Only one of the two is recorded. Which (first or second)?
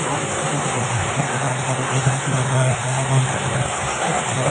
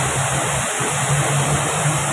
second